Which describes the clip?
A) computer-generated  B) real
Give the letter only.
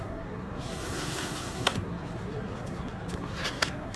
A